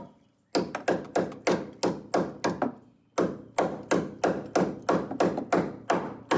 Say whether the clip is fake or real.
real